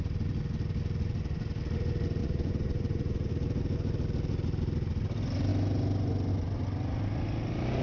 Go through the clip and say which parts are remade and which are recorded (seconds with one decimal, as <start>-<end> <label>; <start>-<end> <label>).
0.0-2.2 recorded; 2.2-3.3 remade; 3.3-7.8 recorded